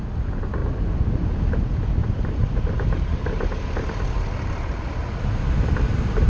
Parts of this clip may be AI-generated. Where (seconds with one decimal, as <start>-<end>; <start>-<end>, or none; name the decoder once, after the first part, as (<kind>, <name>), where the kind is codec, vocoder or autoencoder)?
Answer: none